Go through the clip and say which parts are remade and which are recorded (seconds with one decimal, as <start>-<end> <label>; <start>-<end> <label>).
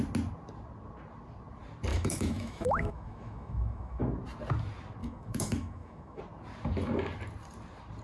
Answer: 0.0-1.9 recorded; 1.9-4.0 remade; 4.0-5.0 recorded; 5.0-6.2 remade; 6.2-8.0 recorded